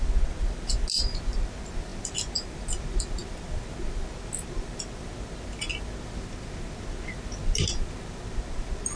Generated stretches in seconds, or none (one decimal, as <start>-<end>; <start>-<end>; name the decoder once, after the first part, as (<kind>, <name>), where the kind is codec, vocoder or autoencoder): none